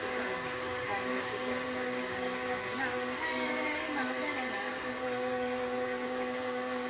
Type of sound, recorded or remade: remade